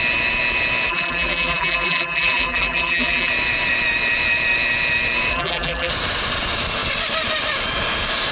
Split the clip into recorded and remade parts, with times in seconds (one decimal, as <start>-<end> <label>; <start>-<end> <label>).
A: 0.0-0.9 recorded; 0.9-3.3 remade; 3.3-5.3 recorded; 5.3-5.9 remade; 5.9-8.3 recorded